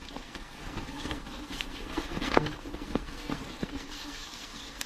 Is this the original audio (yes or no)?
no